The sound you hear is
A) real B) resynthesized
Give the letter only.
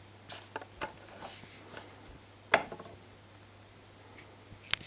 A